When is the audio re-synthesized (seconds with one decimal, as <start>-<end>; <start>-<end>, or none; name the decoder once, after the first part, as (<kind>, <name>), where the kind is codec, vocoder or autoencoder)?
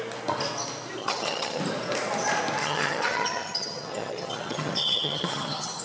1.0-1.6 (vocoder, HiFi-GAN); 2.6-5.8